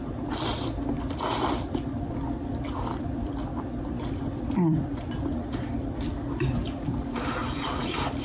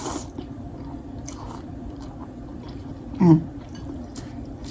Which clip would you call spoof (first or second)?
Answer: second